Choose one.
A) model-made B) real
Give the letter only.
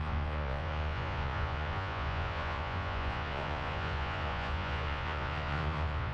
A